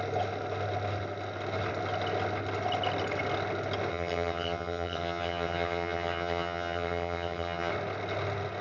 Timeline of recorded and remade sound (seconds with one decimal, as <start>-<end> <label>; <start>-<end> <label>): 0.0-3.9 recorded; 3.9-7.7 remade; 7.7-8.6 recorded